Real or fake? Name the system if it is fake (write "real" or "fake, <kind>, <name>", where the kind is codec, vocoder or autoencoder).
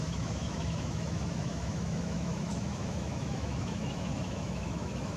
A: fake, autoencoder, DAC-VAE